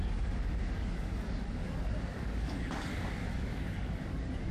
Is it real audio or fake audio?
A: fake